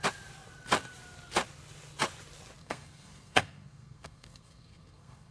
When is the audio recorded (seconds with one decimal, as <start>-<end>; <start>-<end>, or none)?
0.0-2.6